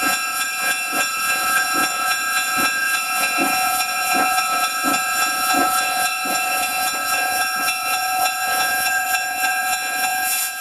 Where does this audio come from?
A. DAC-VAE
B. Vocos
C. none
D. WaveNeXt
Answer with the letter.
B